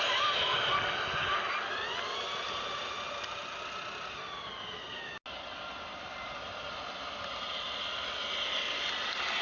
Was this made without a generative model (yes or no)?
yes